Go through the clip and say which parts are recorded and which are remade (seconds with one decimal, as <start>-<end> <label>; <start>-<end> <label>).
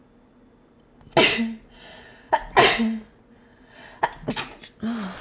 0.0-5.2 recorded